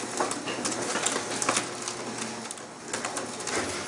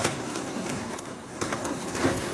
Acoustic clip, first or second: first